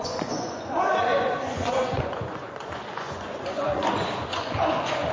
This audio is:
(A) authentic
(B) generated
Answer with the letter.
B